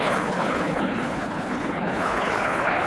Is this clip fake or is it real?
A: fake